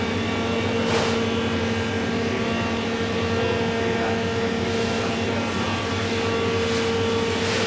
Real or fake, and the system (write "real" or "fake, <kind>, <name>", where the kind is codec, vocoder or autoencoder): real